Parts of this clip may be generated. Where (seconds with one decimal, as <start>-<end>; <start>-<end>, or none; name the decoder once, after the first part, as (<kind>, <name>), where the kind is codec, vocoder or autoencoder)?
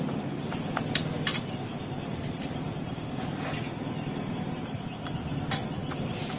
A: 1.3-5.1 (vocoder, BigVGAN v2)